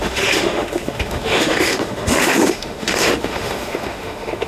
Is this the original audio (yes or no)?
no